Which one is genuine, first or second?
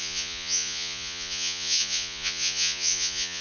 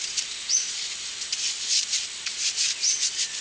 second